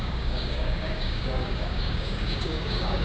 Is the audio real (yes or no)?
no